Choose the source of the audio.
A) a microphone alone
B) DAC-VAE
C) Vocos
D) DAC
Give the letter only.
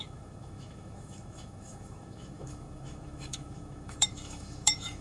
B